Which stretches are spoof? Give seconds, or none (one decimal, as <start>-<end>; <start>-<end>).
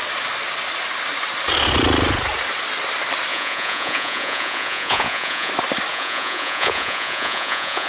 3.3-5.5; 5.9-7.9